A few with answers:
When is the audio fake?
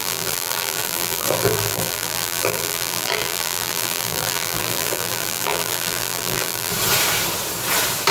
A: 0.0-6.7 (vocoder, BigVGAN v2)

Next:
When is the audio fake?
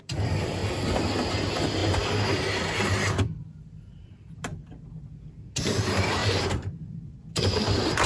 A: 0.0-0.6 (vocoder, BigVGAN v2); 1.3-4.5; 5.6-8.1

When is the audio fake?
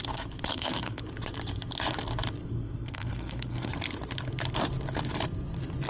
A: 0.5-1.0 (codec, SNAC); 2.4-3.7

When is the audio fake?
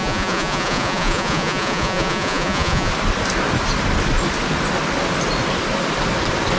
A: 0.0-2.9 (vocoder, Vocos)